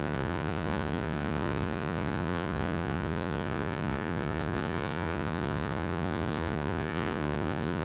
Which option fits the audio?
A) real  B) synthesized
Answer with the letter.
B